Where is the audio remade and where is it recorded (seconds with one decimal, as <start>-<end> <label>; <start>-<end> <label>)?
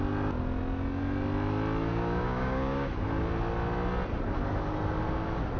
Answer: 0.0-1.9 recorded; 1.9-2.9 remade; 2.9-5.6 recorded